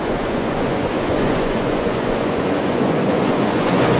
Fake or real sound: fake